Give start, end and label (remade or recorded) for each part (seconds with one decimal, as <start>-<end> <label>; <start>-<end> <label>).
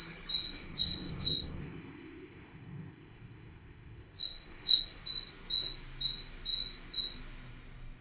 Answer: 0.0-0.4 recorded; 0.4-5.0 remade; 5.0-8.0 recorded